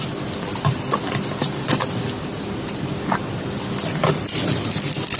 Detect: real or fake real